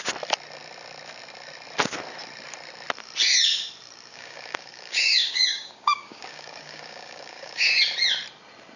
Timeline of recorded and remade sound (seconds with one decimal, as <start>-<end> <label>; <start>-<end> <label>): 0.0-4.1 recorded; 4.1-7.8 remade; 7.8-8.8 recorded